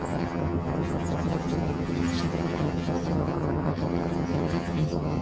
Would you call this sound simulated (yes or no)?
yes